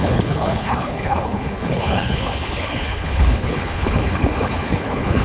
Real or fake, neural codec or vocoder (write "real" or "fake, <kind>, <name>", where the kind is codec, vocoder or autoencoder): fake, codec, HILCodec